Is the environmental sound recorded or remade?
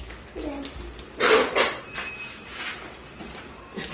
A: recorded